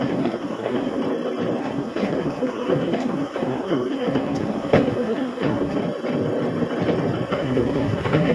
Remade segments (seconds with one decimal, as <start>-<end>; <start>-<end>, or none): 0.0-1.0; 1.6-5.8; 7.3-8.3